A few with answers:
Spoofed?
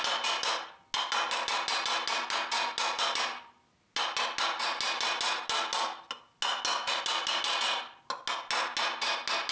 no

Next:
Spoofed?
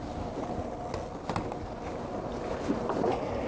no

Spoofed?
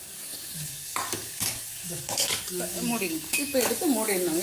yes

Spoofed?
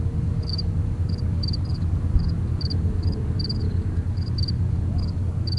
yes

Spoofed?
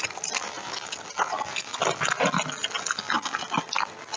no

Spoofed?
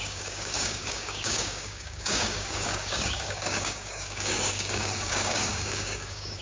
yes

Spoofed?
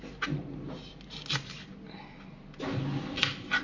no